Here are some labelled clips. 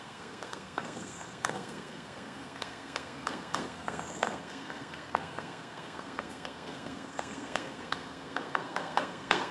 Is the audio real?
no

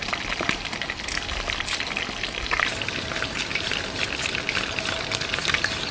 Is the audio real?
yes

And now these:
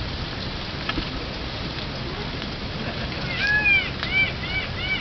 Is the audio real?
yes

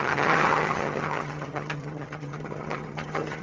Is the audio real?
no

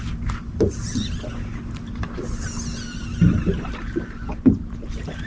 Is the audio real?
yes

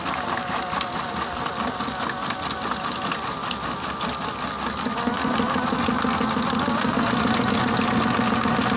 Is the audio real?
yes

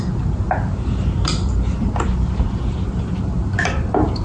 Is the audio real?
no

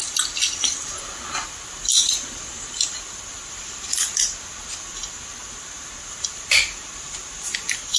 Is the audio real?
yes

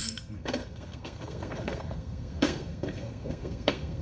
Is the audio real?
no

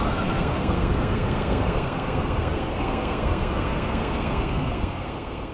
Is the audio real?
no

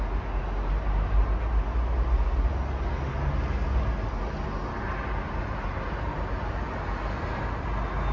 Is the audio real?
yes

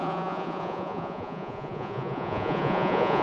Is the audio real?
no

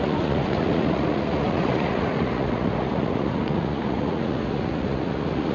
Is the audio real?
no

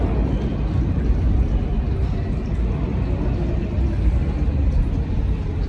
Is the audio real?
yes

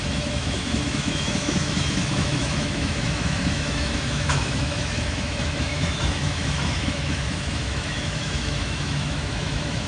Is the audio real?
no